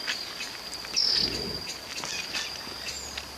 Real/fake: real